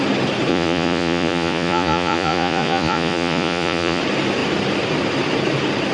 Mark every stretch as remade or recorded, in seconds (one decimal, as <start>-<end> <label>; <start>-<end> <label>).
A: 0.0-0.5 recorded; 0.5-4.0 remade; 4.0-5.9 recorded